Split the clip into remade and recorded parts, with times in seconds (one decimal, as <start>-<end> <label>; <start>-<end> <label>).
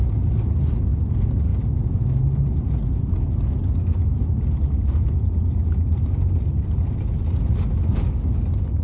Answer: 0.0-8.8 recorded